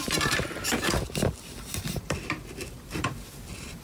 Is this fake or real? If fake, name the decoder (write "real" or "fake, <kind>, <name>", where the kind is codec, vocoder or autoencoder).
fake, vocoder, BigVGAN v2